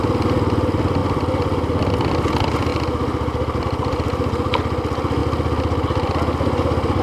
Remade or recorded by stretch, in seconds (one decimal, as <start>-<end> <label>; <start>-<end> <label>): 0.0-7.0 recorded